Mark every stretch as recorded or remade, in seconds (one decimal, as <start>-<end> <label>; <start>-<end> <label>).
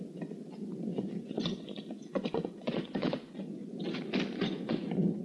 0.0-0.9 recorded; 0.9-4.0 remade; 4.0-4.4 recorded; 4.4-5.2 remade